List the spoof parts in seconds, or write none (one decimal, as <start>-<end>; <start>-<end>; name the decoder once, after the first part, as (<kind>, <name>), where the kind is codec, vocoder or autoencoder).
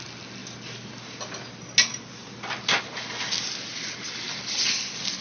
none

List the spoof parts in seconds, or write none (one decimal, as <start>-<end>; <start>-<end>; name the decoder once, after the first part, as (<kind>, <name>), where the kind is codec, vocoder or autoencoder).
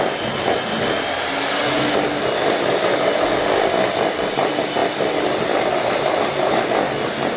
none